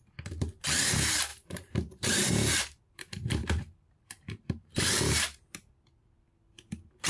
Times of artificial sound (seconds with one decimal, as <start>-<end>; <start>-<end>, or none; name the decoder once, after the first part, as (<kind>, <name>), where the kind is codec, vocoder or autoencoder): 1.3-4.9 (vocoder, BigVGAN v2)